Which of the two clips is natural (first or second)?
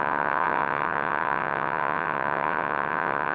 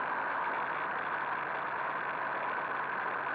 second